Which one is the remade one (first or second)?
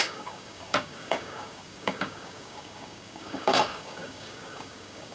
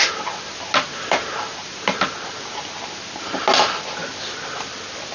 first